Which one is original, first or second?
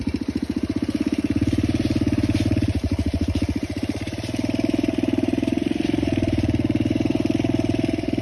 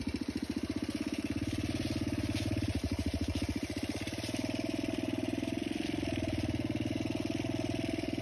second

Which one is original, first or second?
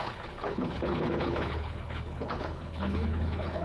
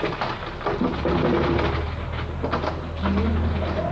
second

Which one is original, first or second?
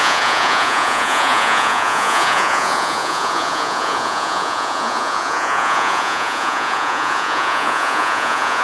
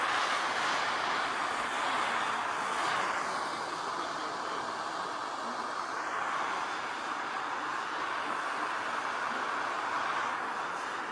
second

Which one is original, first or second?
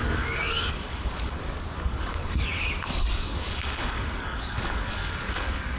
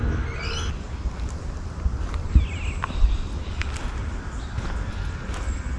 second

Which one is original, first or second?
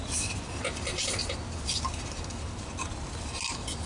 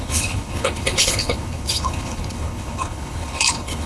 first